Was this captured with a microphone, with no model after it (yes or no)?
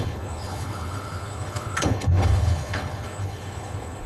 no